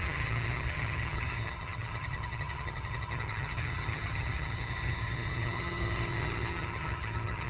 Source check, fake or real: fake